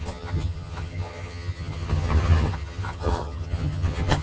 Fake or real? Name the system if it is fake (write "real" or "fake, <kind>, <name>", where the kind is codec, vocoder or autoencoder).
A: fake, vocoder, HiFi-GAN